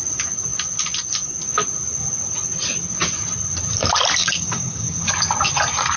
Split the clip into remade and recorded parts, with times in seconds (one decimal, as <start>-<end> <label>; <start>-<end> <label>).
0.0-4.2 recorded; 4.2-5.1 remade; 5.1-6.0 recorded